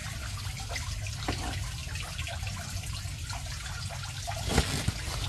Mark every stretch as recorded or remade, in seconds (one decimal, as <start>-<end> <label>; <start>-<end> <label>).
0.0-5.3 recorded